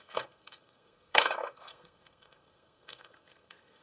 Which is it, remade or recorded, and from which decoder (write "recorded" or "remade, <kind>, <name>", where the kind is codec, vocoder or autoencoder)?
remade, codec, SNAC